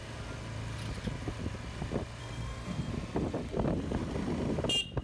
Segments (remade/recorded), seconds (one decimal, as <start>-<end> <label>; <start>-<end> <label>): 0.0-2.2 recorded; 2.2-2.9 remade; 2.9-5.0 recorded

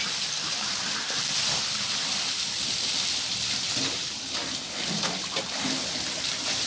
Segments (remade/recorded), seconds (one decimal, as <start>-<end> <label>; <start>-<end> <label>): 0.0-6.7 remade

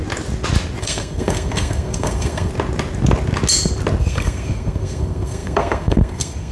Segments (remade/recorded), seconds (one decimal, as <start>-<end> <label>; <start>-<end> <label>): 0.0-0.8 recorded; 0.8-2.5 remade; 2.5-4.0 recorded; 4.0-6.5 remade

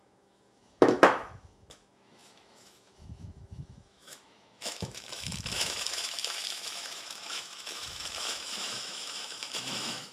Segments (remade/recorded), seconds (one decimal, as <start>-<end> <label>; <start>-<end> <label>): 0.0-10.1 remade

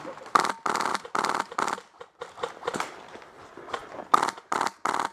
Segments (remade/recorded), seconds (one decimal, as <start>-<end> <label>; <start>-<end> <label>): 0.0-3.8 recorded; 3.8-4.4 remade; 4.4-5.1 recorded

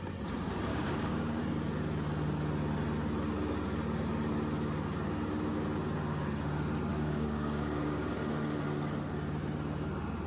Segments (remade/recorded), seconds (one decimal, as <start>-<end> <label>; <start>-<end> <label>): 0.0-0.7 recorded; 0.7-1.4 remade; 1.4-6.9 recorded; 6.9-8.1 remade; 8.1-10.3 recorded

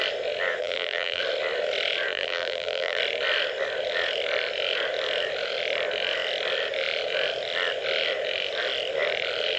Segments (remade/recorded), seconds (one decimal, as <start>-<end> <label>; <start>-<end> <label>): 0.0-0.6 recorded; 0.6-1.2 remade; 1.2-2.1 recorded; 2.1-3.0 remade; 3.0-9.6 recorded

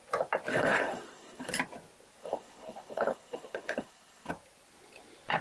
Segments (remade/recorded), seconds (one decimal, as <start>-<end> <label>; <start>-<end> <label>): 0.0-0.5 recorded; 0.5-1.5 remade; 1.5-2.2 recorded; 2.2-4.3 remade; 4.3-5.4 recorded